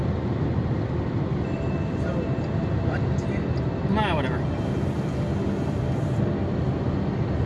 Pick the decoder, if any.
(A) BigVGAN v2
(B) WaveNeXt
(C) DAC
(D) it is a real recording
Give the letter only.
D